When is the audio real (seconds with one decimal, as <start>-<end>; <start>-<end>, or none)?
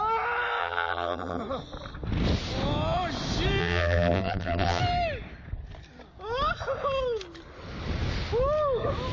0.0-0.6; 1.4-3.6; 4.8-9.1